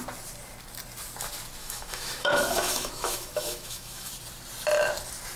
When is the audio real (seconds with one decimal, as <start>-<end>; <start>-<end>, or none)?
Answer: 0.0-1.6; 4.1-5.4